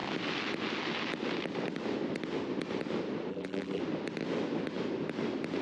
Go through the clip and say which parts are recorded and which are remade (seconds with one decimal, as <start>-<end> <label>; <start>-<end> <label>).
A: 0.0-3.3 recorded; 3.3-3.8 remade; 3.8-5.6 recorded